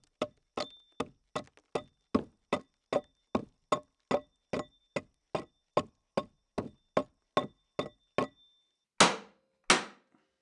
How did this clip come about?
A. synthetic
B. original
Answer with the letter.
B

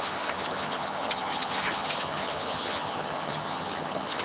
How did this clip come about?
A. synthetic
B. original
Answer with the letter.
A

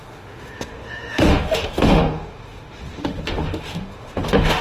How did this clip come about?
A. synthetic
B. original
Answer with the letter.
A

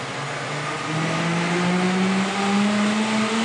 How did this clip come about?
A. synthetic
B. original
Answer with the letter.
B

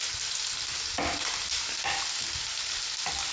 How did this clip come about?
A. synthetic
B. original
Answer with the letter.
B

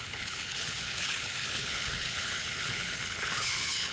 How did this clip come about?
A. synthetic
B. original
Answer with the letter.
A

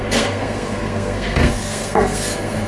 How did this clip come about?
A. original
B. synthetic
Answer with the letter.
B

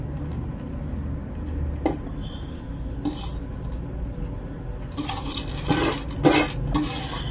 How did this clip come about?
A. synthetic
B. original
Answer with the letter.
B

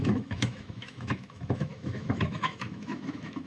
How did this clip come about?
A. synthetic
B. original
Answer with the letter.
A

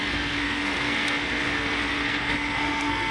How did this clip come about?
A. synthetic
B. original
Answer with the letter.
A